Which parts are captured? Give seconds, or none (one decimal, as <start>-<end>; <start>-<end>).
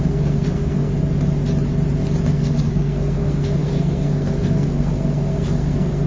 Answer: 0.9-2.3